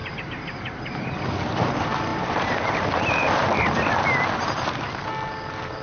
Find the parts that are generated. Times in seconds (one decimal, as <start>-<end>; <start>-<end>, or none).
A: 0.0-1.1; 2.1-2.6